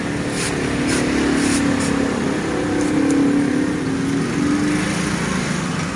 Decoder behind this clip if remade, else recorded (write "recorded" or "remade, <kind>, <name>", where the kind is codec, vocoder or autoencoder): recorded